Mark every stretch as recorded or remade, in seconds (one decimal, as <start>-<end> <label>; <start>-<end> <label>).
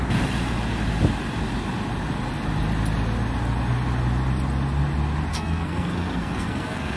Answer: 0.0-5.3 recorded; 5.3-7.0 remade